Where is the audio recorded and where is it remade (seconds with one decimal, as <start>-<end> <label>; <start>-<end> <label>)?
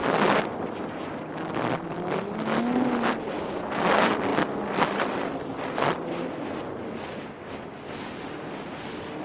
0.0-9.2 recorded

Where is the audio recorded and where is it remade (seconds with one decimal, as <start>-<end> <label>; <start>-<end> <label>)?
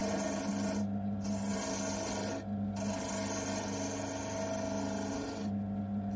0.0-6.2 recorded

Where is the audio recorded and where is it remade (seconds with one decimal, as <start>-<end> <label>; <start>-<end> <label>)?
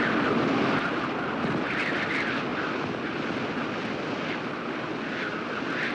0.0-5.9 recorded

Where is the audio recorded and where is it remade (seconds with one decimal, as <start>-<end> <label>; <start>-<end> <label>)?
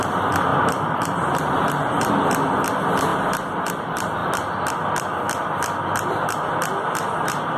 0.0-0.5 recorded; 0.5-2.1 remade; 2.1-7.6 recorded